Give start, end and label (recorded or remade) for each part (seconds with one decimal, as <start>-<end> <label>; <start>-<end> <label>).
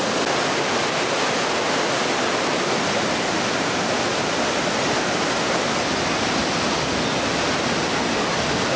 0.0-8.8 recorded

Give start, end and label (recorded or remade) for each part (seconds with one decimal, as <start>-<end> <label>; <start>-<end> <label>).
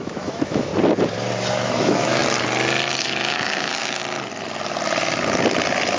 0.0-0.7 remade; 0.7-1.5 recorded; 1.5-2.2 remade; 2.2-3.0 recorded; 3.0-4.0 remade; 4.0-6.0 recorded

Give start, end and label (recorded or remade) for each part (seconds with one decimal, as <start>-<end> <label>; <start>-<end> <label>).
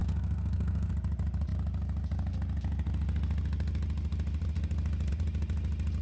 0.0-0.9 remade; 0.9-6.0 recorded